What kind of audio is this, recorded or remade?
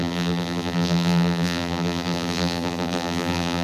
remade